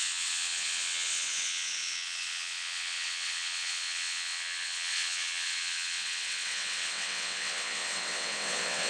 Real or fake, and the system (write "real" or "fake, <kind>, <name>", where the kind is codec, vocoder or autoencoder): fake, vocoder, WaveNeXt